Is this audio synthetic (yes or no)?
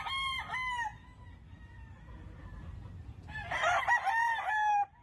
no